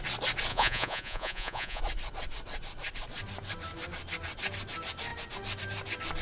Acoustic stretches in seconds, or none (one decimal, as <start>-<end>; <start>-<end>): 0.0-0.5; 1.8-6.2